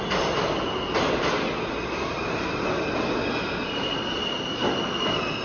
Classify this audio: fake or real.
real